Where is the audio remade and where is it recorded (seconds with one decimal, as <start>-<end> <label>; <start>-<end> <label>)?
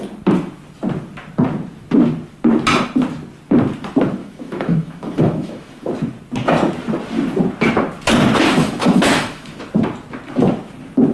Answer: 0.0-4.2 recorded; 4.2-5.9 remade; 5.9-8.6 recorded; 8.6-9.6 remade; 9.6-11.1 recorded